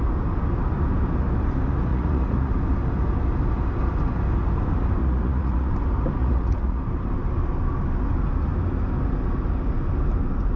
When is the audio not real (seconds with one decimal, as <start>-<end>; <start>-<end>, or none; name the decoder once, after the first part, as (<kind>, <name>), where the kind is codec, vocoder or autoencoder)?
1.9-2.5 (vocoder, Vocos); 5.0-5.7; 6.2-6.8